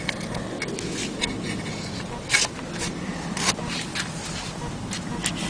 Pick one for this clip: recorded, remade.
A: recorded